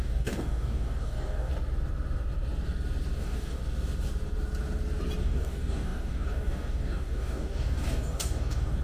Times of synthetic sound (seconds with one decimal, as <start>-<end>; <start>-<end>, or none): 0.0-1.5; 3.2-3.6; 5.2-8.8